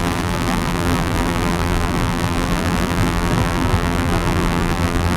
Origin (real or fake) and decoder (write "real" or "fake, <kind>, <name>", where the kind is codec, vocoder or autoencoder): fake, vocoder, BigVGAN v2